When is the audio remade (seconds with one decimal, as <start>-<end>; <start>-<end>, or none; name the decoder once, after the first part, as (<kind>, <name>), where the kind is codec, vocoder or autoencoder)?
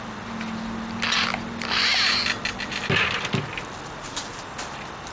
none